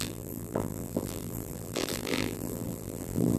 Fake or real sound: fake